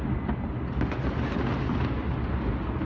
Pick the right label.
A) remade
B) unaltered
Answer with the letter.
B